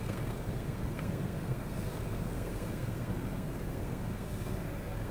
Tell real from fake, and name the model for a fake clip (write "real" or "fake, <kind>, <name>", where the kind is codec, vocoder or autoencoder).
fake, codec, SNAC